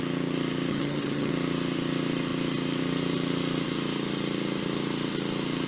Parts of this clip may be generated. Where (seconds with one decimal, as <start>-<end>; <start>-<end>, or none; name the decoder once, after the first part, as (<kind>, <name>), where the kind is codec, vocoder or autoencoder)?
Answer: 0.7-1.3 (vocoder, HiFi-GAN)